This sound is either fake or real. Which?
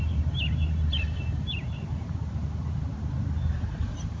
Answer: fake